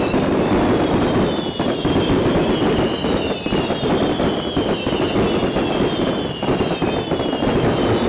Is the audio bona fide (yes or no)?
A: yes